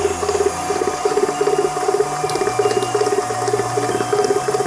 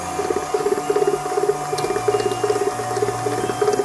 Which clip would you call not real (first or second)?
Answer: first